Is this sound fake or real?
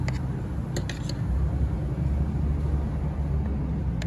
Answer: real